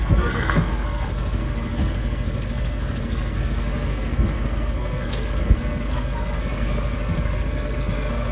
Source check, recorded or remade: remade